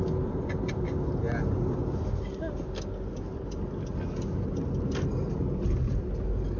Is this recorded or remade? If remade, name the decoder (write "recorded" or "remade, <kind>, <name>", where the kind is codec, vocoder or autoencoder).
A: recorded